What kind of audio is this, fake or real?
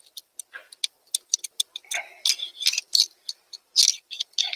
real